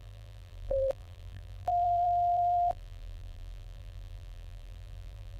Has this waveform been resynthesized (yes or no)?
yes